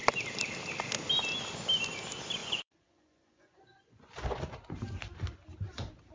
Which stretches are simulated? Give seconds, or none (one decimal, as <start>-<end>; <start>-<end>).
2.4-4.4